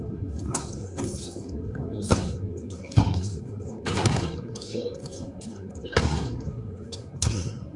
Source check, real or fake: fake